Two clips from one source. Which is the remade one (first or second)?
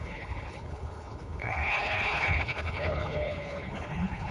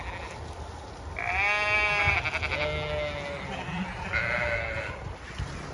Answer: first